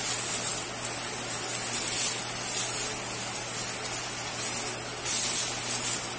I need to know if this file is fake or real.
real